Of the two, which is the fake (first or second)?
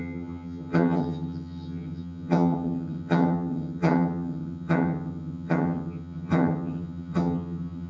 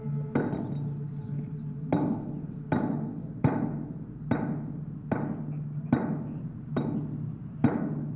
first